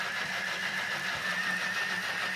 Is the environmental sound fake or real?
real